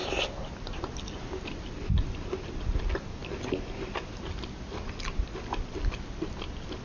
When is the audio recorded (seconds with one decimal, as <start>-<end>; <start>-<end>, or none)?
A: 0.0-6.8